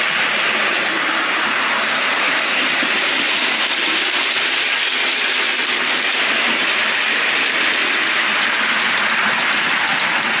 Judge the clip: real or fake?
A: fake